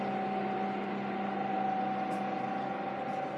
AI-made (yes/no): no